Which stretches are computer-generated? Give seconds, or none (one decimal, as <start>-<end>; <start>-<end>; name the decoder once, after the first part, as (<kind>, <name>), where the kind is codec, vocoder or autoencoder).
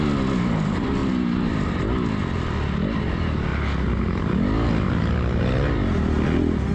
none